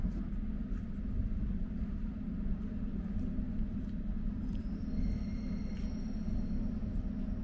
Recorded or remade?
recorded